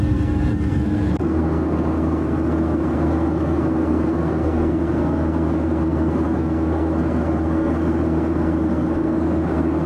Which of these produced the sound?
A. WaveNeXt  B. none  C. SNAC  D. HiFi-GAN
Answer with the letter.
C